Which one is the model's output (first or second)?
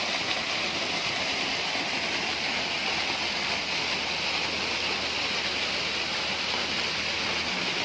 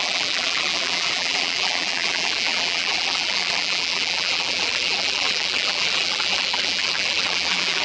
second